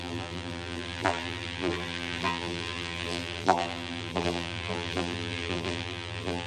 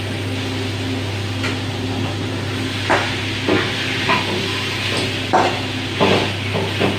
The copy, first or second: first